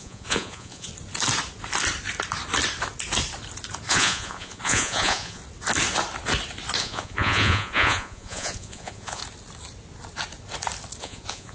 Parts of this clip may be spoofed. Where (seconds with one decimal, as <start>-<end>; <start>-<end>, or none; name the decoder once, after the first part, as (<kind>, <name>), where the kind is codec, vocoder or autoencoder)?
0.0-0.9 (vocoder, Vocos); 3.9-5.4; 6.8-9.2; 11.0-11.5